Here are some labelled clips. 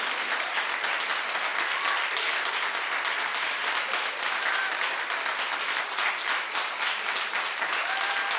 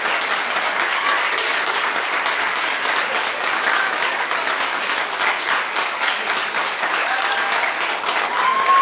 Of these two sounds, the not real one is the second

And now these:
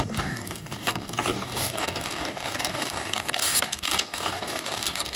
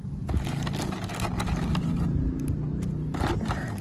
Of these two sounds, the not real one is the first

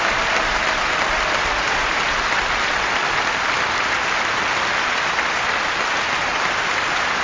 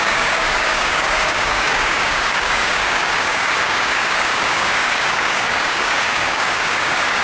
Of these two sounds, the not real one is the second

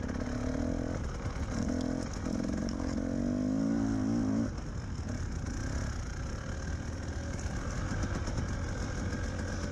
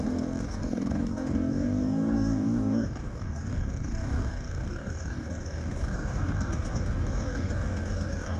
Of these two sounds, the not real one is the second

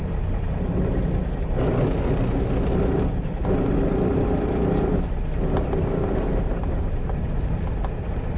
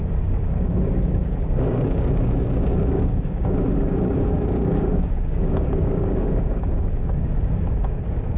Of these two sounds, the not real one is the second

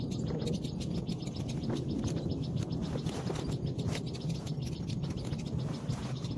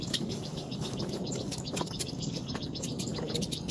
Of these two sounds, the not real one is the second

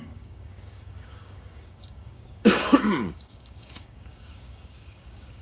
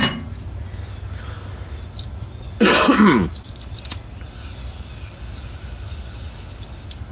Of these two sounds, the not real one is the first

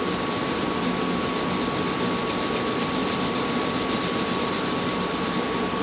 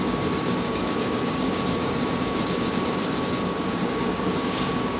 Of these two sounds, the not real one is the second